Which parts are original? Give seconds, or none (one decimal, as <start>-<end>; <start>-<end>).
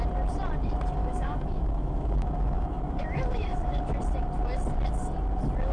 0.0-1.0; 3.8-5.7